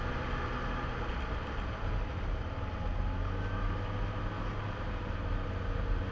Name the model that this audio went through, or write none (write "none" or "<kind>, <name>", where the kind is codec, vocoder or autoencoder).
none